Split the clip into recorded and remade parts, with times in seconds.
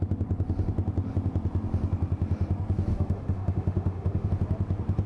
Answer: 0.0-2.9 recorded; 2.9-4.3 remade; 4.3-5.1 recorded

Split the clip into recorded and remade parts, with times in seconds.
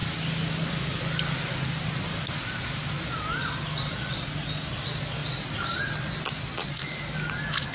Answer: 0.0-7.7 recorded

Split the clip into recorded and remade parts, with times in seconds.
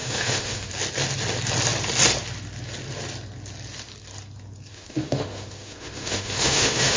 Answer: 0.0-0.7 remade; 0.7-4.7 recorded; 4.7-7.0 remade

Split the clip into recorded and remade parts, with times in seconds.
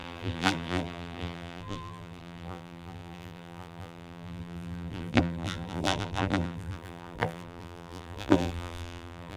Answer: 0.0-9.4 remade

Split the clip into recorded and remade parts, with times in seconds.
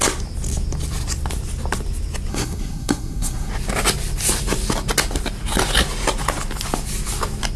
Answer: 0.0-2.3 recorded; 2.3-3.5 remade; 3.5-7.6 recorded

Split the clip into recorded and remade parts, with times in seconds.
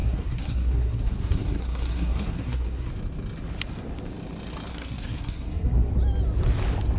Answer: 0.0-2.9 remade; 2.9-4.7 recorded; 4.7-5.9 remade; 5.9-7.0 recorded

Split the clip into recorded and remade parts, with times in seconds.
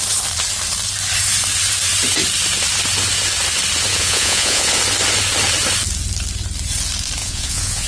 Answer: 0.0-3.9 recorded; 3.9-4.8 remade; 4.8-7.2 recorded; 7.2-7.9 remade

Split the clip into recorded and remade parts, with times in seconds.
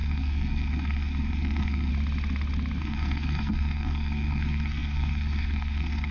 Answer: 0.0-1.9 remade; 1.9-2.8 recorded; 2.8-6.1 remade